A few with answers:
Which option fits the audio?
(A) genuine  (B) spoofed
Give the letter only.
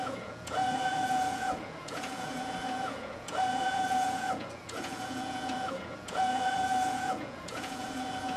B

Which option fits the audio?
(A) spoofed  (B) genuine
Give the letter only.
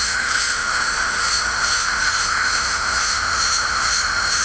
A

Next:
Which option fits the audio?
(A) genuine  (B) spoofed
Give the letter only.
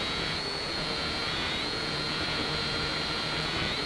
B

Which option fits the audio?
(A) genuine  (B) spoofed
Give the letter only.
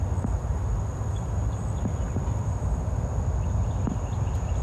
A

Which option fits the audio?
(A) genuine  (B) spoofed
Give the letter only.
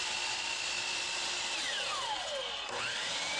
A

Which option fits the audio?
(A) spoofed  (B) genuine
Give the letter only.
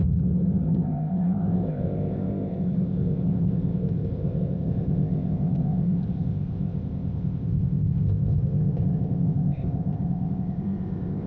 A